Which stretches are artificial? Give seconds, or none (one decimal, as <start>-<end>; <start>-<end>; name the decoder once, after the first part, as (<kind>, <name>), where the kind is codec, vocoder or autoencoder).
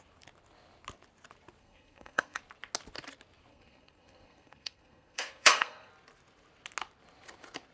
1.6-2.4 (codec, SNAC); 3.5-5.9